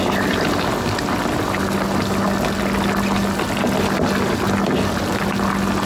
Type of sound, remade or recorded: recorded